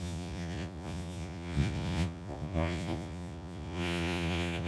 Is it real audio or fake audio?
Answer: fake